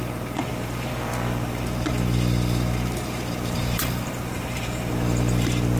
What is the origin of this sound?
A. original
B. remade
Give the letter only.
B